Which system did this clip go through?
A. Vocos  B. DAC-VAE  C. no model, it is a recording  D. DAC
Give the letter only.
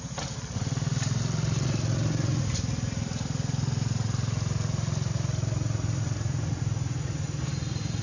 C